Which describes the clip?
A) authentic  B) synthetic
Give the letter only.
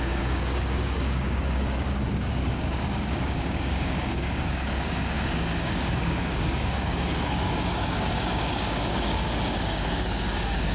B